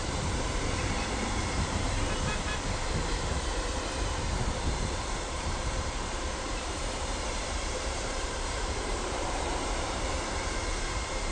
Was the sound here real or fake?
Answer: fake